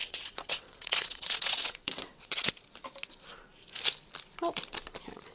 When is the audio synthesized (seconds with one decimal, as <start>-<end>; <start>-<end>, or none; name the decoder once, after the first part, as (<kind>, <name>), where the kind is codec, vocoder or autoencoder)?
0.0-2.5 (vocoder, WaveNeXt)